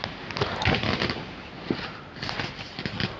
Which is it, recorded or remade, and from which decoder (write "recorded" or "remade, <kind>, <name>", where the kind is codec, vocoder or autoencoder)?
recorded